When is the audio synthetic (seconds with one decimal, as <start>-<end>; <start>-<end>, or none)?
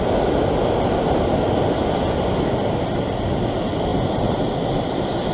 3.9-4.5